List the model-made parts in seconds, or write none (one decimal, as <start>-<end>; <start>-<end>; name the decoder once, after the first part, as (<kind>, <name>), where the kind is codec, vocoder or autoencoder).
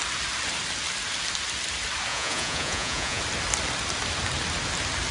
2.1-3.2 (vocoder, Vocos)